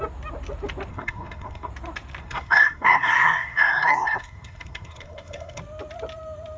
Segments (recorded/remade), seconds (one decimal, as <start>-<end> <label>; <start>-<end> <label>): 0.0-0.9 recorded; 0.9-1.7 remade; 1.7-2.2 recorded; 2.2-5.6 remade; 5.6-6.6 recorded